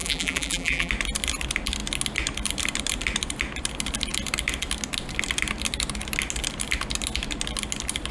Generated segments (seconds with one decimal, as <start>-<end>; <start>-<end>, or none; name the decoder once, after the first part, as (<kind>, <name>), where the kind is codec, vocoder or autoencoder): 0.0-0.9 (vocoder, BigVGAN v2)